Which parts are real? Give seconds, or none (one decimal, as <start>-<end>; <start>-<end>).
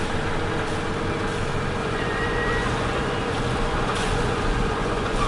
0.0-1.8